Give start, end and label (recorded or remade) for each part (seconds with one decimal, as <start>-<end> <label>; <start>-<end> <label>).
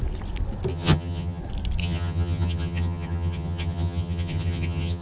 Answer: 0.0-0.7 recorded; 0.7-1.4 remade; 1.4-1.8 recorded; 1.8-5.0 remade